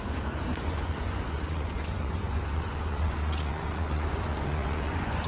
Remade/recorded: remade